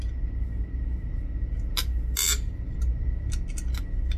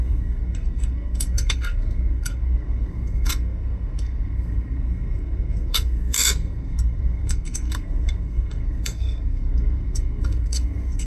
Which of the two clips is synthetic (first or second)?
second